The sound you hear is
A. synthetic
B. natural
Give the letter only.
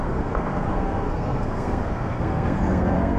A